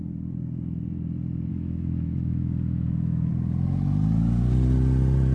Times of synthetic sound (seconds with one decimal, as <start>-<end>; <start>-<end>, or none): 1.5-3.3